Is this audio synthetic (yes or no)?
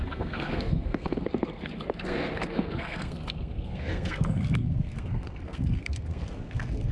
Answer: yes